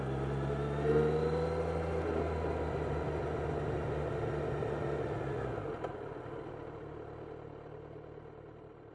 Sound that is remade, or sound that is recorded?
recorded